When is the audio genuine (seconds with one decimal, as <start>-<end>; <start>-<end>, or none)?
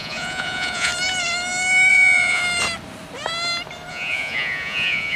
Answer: 0.9-1.9; 2.4-3.9